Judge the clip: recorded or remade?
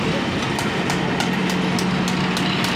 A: recorded